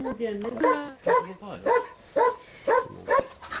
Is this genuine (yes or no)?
yes